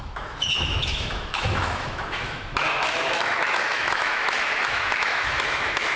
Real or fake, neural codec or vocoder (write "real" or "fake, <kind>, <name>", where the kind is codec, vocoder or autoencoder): fake, autoencoder, DAC-VAE